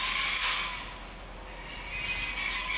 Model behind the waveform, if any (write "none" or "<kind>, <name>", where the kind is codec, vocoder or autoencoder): none